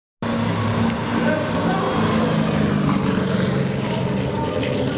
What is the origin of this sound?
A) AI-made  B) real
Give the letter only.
B